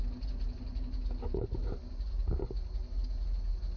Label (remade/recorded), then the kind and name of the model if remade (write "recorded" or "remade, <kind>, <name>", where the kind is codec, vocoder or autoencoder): recorded